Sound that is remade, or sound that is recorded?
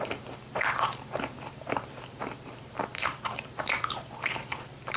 remade